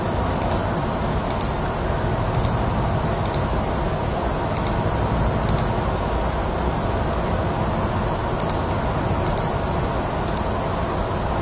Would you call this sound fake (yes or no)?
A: no